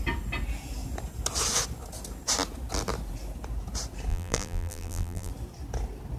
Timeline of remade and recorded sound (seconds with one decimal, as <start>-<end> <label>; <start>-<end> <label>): 0.0-4.1 recorded; 4.1-5.3 remade; 5.3-6.2 recorded